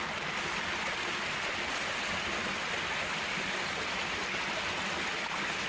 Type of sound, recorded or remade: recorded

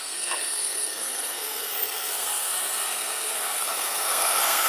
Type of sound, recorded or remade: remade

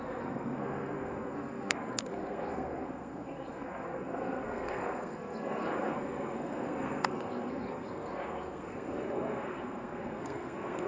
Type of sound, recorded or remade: remade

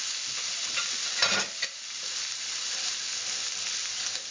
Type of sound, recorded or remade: recorded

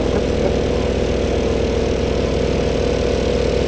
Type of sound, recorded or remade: recorded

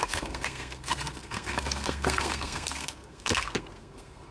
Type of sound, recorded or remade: remade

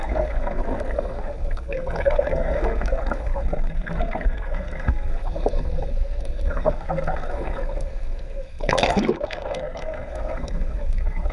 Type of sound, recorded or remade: remade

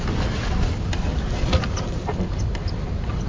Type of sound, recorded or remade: recorded